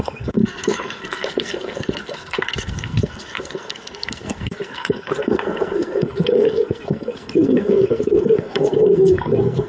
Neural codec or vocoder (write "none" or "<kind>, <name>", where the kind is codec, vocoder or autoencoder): codec, SNAC